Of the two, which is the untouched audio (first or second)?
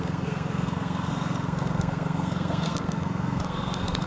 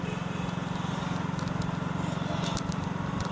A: second